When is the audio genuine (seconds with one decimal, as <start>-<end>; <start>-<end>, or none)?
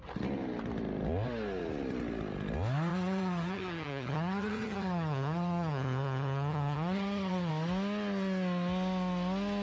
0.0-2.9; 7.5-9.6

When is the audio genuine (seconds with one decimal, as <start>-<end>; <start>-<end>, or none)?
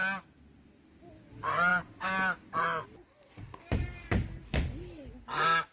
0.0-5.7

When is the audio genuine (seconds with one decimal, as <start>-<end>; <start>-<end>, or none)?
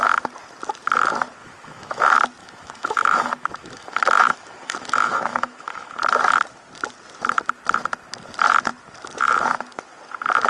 0.0-1.4; 2.0-2.4; 6.0-10.5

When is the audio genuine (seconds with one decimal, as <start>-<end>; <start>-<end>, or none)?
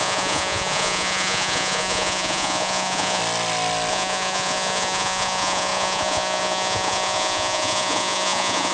3.2-3.9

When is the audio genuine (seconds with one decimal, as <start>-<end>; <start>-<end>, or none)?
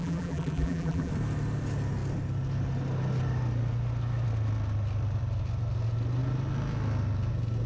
1.1-7.7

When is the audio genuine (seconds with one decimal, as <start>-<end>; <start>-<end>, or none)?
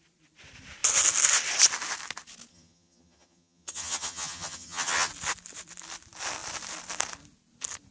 0.0-2.5; 5.1-7.9